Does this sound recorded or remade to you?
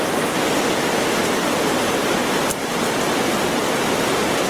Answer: recorded